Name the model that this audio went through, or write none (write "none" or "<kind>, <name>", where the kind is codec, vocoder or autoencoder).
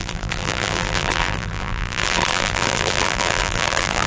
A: vocoder, BigVGAN v2